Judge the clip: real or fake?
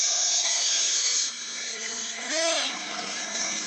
fake